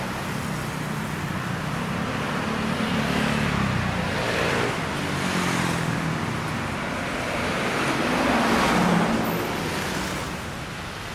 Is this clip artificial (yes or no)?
no